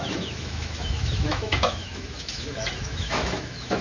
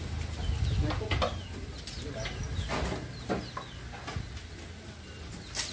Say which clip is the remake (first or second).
first